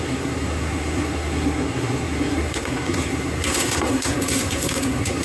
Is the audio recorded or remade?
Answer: remade